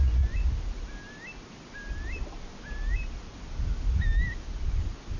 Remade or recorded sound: recorded